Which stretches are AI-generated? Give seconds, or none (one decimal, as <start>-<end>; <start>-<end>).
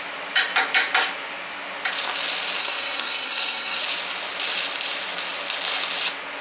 2.6-3.8